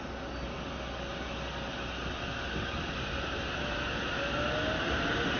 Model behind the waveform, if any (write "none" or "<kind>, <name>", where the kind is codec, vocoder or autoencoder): none